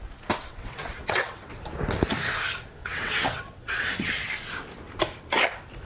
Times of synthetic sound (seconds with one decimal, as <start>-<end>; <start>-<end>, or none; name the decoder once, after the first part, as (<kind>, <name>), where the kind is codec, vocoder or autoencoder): 0.5-1.5 (vocoder, WaveNeXt); 2.8-4.3